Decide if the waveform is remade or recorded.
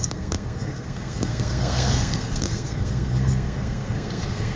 remade